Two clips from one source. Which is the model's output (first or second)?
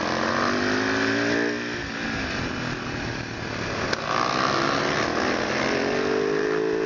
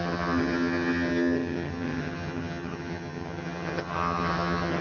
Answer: second